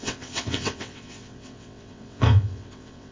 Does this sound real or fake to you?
fake